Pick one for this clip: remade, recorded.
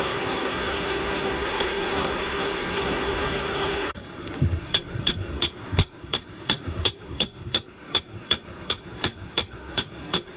remade